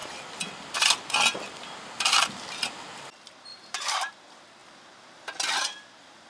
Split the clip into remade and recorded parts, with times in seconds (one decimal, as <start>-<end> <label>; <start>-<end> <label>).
0.0-3.5 recorded; 3.5-4.1 remade; 4.1-6.3 recorded